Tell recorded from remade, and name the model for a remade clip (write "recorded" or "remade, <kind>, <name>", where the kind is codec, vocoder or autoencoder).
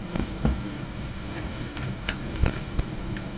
remade, codec, DAC